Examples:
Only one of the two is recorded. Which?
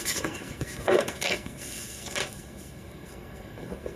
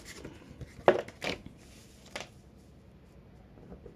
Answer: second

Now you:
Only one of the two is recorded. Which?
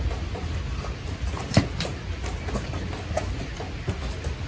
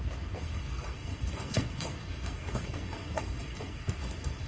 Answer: first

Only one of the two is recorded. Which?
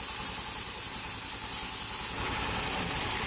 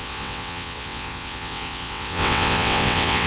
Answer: first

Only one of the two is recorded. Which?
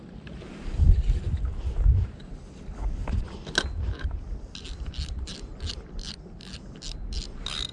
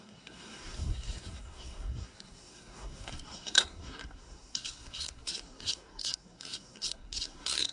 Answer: first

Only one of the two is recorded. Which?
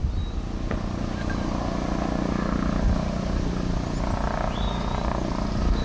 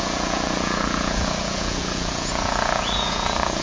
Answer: first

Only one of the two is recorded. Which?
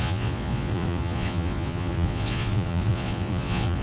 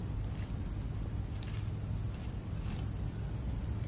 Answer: second